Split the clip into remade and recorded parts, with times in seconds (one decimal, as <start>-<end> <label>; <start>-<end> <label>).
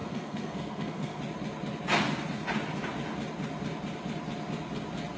0.0-1.2 remade; 1.2-5.2 recorded